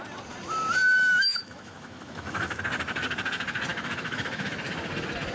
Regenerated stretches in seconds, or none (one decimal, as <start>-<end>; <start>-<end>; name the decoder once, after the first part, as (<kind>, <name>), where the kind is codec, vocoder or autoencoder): 0.8-2.6 (autoencoder, DAC-VAE); 3.7-4.6